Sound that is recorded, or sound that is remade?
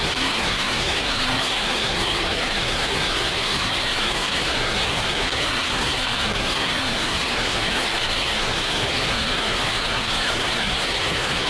remade